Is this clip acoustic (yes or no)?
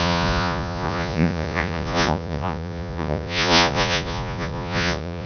no